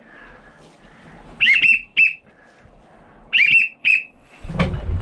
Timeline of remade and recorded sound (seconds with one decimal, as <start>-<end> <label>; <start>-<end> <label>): 0.0-3.8 recorded; 3.8-4.5 remade; 4.5-5.0 recorded